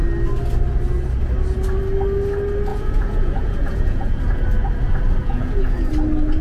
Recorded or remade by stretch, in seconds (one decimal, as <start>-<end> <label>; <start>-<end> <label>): 0.0-2.7 recorded; 2.7-4.2 remade; 4.2-5.2 recorded; 5.2-5.9 remade; 5.9-6.4 recorded